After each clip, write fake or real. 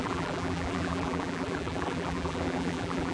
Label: fake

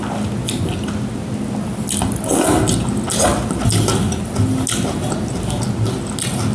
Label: real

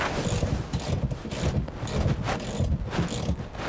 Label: real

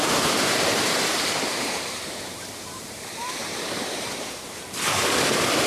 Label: fake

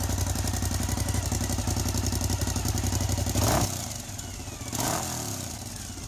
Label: real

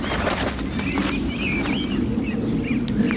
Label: real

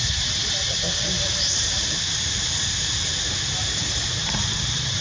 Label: fake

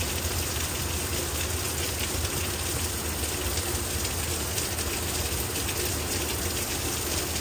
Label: real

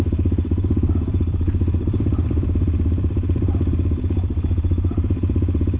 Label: fake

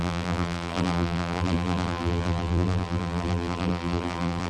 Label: fake